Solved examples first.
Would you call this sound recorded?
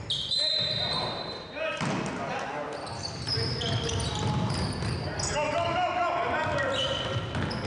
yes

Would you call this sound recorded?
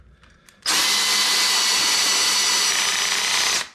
yes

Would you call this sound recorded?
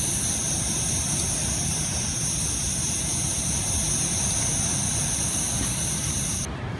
yes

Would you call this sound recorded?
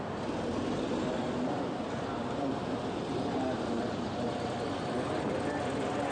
no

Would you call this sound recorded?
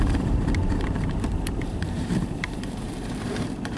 no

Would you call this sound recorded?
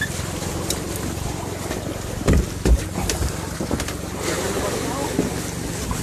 yes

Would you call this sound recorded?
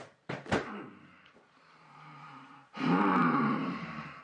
no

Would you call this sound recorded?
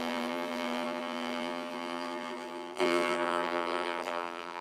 no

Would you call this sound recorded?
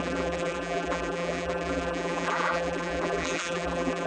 no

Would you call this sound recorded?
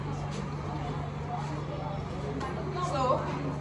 yes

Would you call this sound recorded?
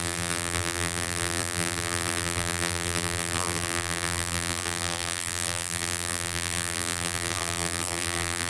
no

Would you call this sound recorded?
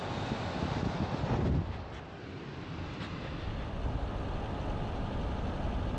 yes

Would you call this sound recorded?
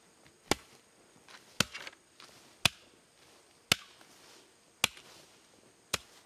yes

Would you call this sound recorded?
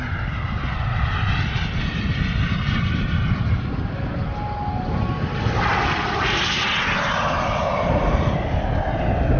yes